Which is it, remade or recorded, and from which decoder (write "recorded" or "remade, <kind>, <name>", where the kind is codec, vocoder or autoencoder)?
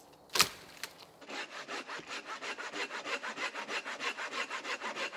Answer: recorded